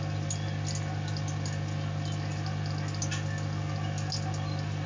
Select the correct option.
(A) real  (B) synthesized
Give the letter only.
A